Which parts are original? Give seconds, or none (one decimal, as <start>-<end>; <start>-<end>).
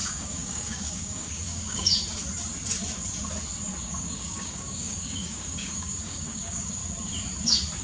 1.9-3.8; 6.8-7.8